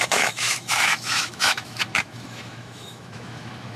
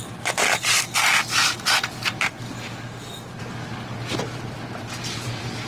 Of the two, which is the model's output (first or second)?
first